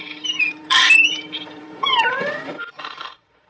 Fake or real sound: fake